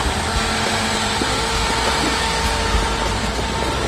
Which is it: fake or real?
real